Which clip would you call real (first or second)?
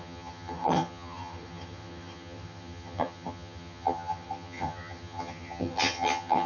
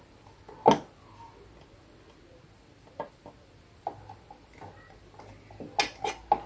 second